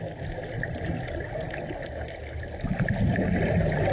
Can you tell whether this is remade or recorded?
recorded